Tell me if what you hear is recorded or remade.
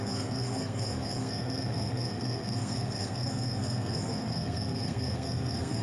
remade